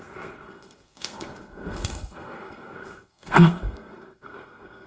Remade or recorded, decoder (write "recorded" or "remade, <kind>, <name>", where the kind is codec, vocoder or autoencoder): remade, codec, SNAC